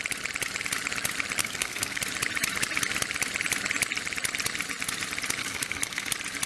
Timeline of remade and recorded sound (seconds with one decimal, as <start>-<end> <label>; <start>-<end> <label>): 0.0-1.4 recorded; 1.4-2.0 remade; 2.0-5.4 recorded; 5.4-6.1 remade; 6.1-6.5 recorded